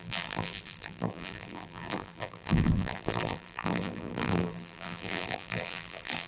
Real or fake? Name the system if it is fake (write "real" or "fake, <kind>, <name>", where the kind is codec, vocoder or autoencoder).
fake, vocoder, BigVGAN v2